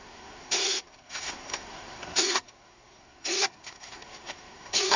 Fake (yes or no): yes